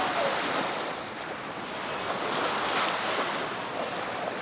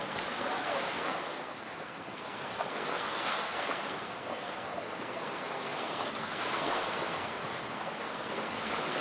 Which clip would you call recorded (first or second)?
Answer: first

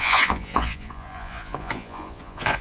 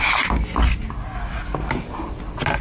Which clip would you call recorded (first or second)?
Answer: second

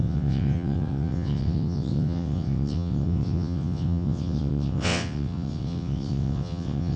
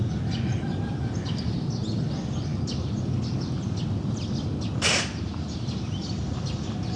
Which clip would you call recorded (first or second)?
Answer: second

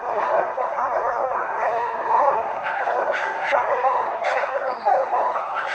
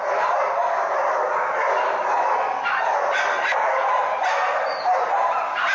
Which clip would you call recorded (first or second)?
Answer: second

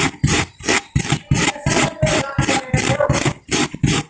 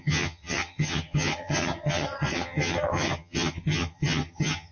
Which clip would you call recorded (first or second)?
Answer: first